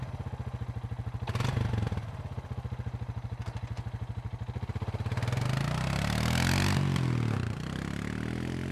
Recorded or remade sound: recorded